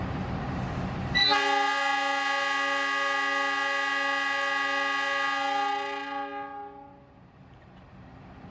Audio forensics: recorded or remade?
recorded